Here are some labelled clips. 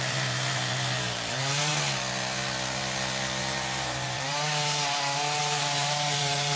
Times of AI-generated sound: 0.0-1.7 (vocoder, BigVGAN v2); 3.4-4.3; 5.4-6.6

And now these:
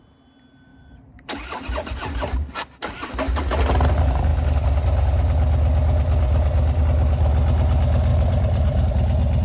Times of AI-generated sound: 0.7-3.1 (vocoder, BigVGAN v2); 8.1-8.9

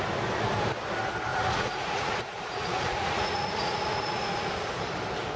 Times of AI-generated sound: 1.3-4.5 (vocoder, Vocos)

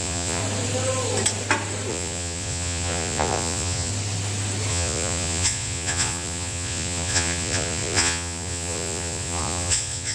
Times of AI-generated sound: 0.0-0.4 (vocoder, Vocos); 1.9-3.9; 4.7-10.1